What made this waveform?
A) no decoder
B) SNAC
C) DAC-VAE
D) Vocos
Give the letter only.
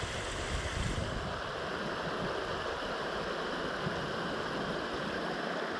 A